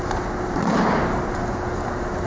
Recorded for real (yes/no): yes